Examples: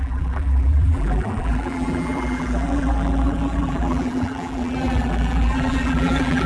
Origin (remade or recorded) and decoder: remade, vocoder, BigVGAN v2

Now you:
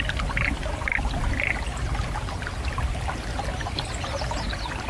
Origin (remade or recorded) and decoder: recorded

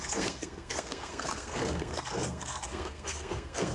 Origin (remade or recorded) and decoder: remade, codec, SNAC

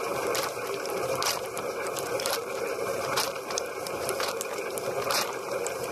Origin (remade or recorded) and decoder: remade, vocoder, BigVGAN v2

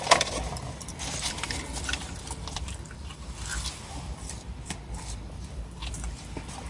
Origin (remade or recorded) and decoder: remade, vocoder, BigVGAN v2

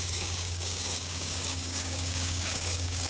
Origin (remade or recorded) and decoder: remade, codec, DAC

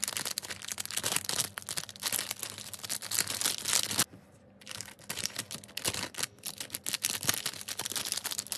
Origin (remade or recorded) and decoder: recorded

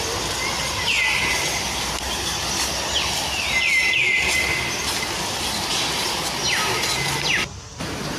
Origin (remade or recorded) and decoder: recorded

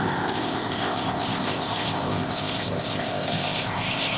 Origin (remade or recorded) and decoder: remade, codec, ZipCodec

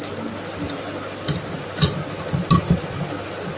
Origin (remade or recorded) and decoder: recorded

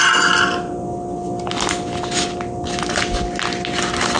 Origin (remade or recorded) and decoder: recorded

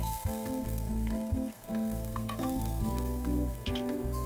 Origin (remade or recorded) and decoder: remade, codec, SNAC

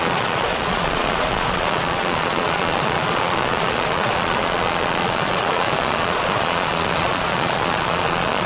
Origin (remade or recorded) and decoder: remade, vocoder, Vocos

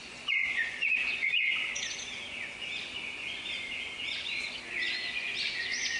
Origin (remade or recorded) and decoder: remade, vocoder, Vocos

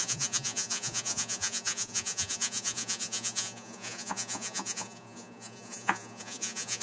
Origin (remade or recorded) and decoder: remade, vocoder, Vocos